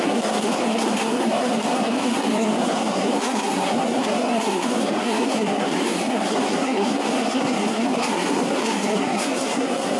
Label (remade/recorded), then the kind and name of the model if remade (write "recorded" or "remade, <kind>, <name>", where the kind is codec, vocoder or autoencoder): remade, codec, SNAC